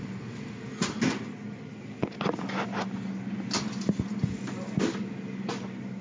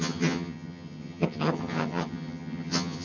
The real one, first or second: first